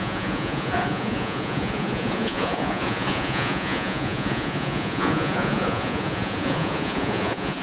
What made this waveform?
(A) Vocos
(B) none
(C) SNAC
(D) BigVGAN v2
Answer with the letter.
A